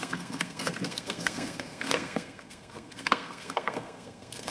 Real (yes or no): no